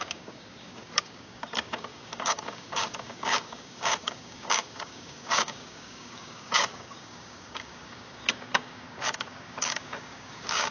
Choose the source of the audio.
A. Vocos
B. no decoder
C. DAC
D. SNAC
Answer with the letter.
C